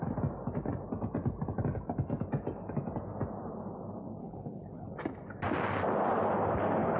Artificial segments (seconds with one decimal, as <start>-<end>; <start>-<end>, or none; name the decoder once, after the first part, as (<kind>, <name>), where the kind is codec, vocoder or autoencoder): 4.2-4.9 (codec, HILCodec)